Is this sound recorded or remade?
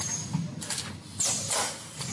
recorded